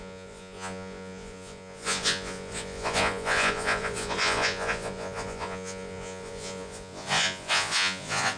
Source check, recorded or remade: remade